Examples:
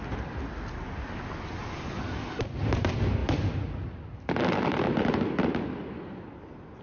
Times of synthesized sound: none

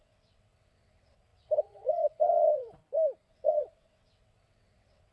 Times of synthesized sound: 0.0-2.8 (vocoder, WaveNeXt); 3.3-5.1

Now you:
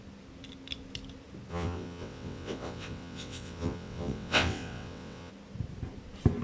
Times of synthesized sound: 1.5-5.3 (vocoder, WaveNeXt)